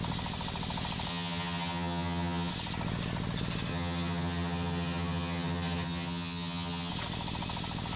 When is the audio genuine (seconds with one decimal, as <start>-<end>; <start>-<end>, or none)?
0.0-1.1; 2.5-3.7; 6.9-8.0